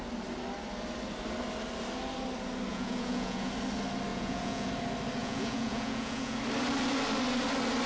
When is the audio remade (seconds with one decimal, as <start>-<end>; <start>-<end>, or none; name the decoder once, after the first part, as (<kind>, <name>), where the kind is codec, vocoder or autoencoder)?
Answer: 2.7-3.5 (vocoder, Vocos); 4.1-4.7; 5.2-6.4